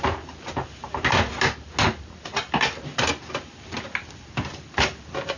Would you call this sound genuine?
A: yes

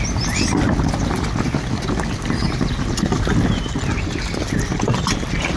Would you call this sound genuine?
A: yes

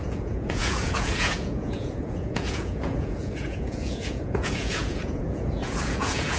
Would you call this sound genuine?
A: no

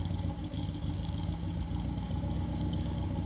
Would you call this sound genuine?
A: no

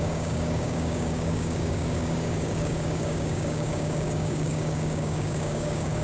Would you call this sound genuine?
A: no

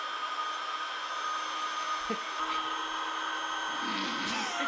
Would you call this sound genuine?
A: yes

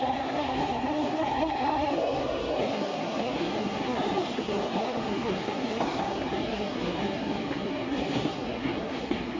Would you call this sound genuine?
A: no